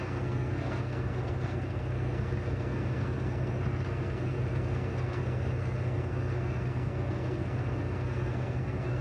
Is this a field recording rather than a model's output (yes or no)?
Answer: no